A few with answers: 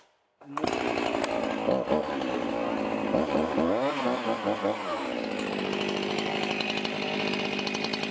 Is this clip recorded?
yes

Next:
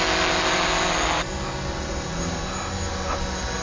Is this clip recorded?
yes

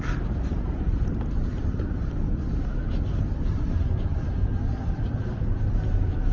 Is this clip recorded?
yes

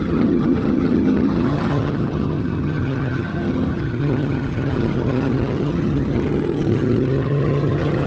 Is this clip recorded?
no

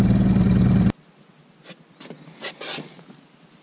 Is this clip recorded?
yes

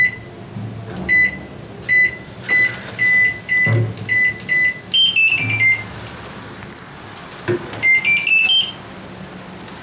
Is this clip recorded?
yes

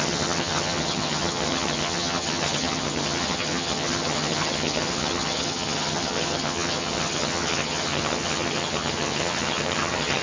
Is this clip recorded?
no